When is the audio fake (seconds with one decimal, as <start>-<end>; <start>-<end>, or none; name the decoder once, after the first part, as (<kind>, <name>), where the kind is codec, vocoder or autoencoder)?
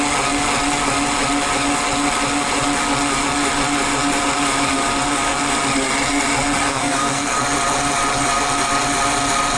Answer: 6.7-7.4 (codec, SNAC)